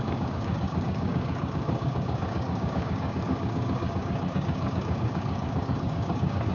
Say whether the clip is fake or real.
fake